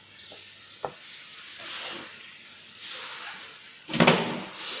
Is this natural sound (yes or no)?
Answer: yes